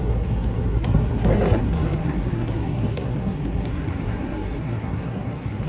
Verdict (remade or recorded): remade